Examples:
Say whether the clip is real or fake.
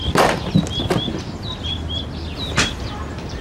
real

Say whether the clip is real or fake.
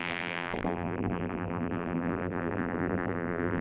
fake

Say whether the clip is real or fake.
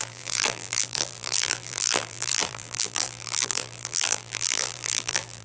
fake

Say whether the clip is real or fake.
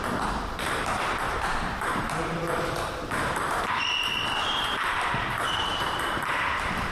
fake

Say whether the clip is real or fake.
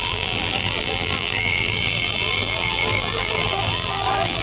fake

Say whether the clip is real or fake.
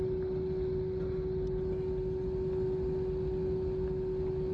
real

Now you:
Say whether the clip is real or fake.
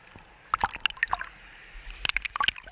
real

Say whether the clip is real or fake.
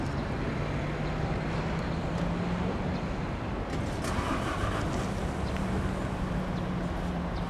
real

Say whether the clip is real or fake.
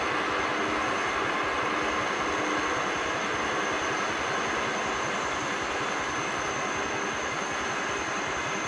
real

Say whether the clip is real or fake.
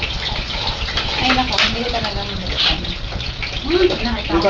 real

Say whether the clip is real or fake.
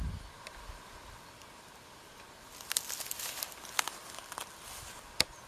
real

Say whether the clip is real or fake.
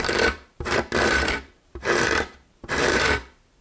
fake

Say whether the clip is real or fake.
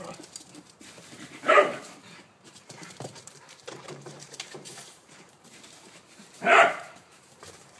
fake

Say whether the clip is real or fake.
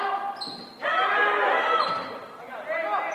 real